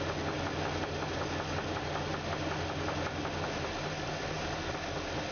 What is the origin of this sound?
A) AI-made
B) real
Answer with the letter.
B